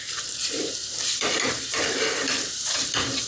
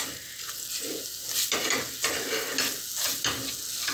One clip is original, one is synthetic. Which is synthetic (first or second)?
first